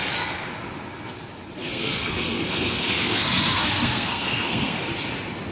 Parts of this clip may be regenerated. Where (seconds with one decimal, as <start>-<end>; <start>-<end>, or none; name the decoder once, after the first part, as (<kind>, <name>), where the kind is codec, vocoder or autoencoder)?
0.0-0.5 (codec, SNAC); 1.6-4.9